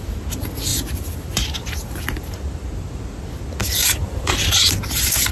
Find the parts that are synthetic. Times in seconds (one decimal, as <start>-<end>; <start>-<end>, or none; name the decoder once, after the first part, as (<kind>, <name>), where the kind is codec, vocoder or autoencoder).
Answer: 0.7-3.0 (vocoder, BigVGAN v2); 3.8-4.7